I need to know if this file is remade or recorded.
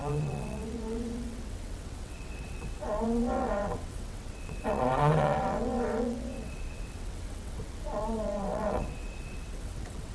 remade